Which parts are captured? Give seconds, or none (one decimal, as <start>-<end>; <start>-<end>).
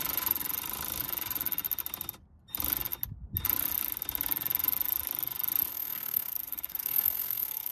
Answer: 0.0-5.7